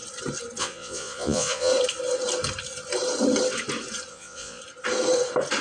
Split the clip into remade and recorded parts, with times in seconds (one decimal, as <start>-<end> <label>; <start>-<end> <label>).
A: 0.0-0.6 recorded; 0.6-1.7 remade; 1.7-4.1 recorded; 4.1-4.6 remade; 4.6-5.6 recorded

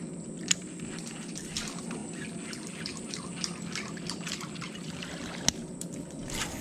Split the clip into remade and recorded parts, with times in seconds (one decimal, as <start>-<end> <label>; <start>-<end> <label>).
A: 0.0-6.6 recorded

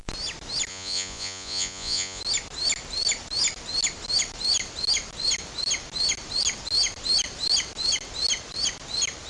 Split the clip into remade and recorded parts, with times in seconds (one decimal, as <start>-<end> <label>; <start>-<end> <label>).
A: 0.0-0.7 recorded; 0.7-2.2 remade; 2.2-9.3 recorded

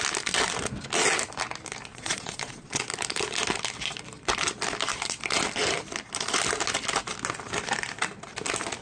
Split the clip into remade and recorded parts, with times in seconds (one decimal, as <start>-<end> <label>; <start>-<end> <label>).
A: 0.0-1.9 recorded; 1.9-2.8 remade; 2.8-8.8 recorded